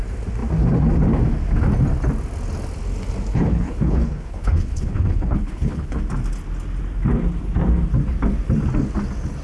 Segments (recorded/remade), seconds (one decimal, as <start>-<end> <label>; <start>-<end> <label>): 0.0-3.3 recorded; 3.3-6.0 remade; 6.0-9.4 recorded